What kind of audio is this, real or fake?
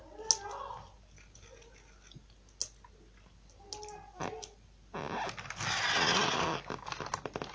real